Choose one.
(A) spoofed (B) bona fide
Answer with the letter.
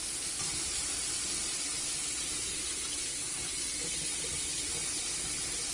B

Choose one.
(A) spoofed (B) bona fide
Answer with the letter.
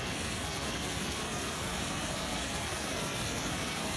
A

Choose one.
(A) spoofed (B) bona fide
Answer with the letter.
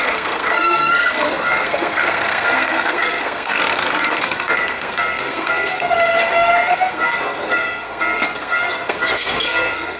A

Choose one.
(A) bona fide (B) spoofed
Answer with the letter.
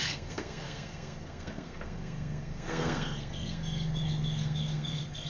B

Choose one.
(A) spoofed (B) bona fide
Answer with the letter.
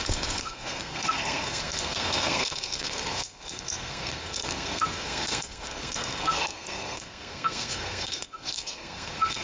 A